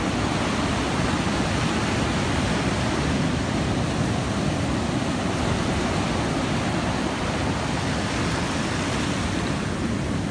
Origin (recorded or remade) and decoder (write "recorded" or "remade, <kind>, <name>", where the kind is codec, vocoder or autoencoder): recorded